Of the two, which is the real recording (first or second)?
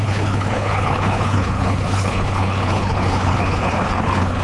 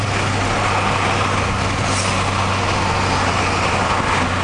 second